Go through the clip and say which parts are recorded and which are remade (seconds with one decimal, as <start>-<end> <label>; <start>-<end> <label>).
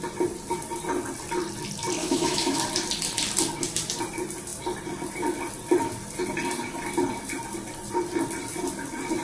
0.0-2.0 recorded; 2.0-2.6 remade; 2.6-9.2 recorded